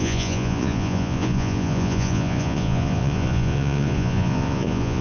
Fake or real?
fake